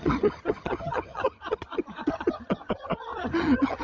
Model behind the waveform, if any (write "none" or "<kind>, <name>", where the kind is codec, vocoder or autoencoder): vocoder, HiFi-GAN